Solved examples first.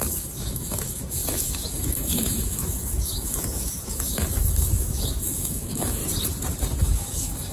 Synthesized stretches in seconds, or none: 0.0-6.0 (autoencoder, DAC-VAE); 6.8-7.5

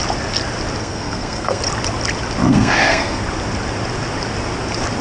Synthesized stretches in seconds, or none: 0.8-1.6 (codec, SNAC); 2.5-3.2

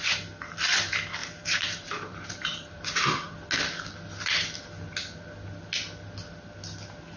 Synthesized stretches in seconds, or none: 1.2-3.3 (vocoder, BigVGAN v2)

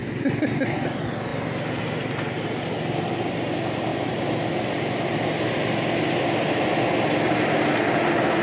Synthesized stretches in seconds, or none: none